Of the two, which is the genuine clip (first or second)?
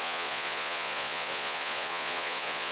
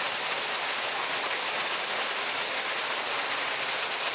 second